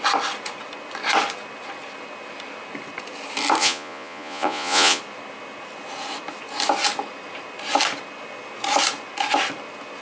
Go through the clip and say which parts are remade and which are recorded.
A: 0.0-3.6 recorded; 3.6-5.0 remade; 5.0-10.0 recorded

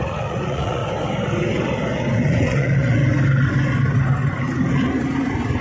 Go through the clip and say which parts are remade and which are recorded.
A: 0.0-0.8 remade; 0.8-2.2 recorded; 2.2-3.0 remade; 3.0-5.6 recorded

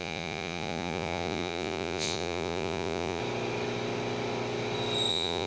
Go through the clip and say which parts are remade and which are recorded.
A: 0.0-3.2 remade; 3.2-5.1 recorded; 5.1-5.5 remade

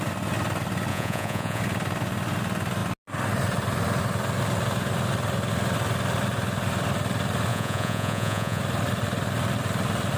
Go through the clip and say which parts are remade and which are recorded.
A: 0.0-0.9 recorded; 0.9-1.6 remade; 1.6-7.5 recorded; 7.5-8.6 remade; 8.6-10.2 recorded

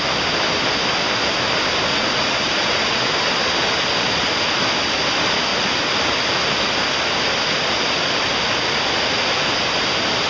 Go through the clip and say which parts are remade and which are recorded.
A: 0.0-1.9 recorded; 1.9-3.1 remade; 3.1-10.3 recorded

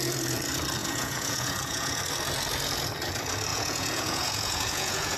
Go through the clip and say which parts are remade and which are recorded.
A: 0.0-0.8 recorded; 0.8-2.0 remade; 2.0-3.5 recorded; 3.5-5.2 remade

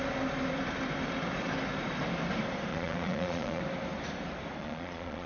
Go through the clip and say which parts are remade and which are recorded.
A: 0.0-2.7 recorded; 2.7-3.6 remade; 3.6-4.6 recorded; 4.6-5.3 remade